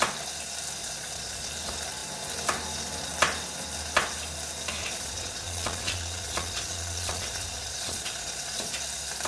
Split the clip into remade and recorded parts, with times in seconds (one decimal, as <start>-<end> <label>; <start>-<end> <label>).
0.0-0.8 recorded; 0.8-1.5 remade; 1.5-4.8 recorded; 4.8-8.7 remade; 8.7-9.3 recorded